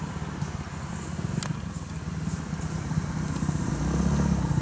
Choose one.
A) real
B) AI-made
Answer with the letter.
A